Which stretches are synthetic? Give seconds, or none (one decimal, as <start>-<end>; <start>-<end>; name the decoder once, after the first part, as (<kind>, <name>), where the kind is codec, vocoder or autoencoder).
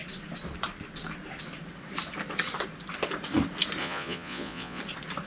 3.8-4.8 (vocoder, Vocos)